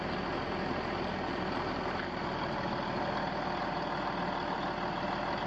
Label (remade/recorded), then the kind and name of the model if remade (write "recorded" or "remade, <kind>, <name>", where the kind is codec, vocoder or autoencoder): recorded